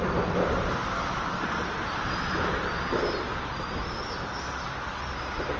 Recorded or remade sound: recorded